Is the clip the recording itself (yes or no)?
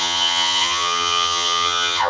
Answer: no